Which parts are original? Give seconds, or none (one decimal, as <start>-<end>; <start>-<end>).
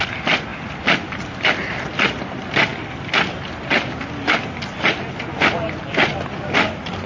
0.0-7.1